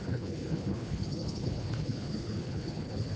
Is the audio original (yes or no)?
no